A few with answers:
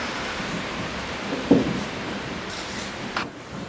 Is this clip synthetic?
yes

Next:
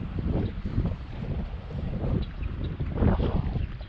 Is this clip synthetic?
yes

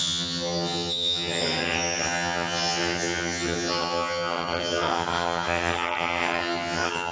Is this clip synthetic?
yes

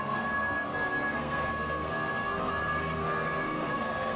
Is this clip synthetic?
yes